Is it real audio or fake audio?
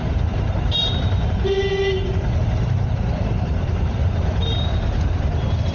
fake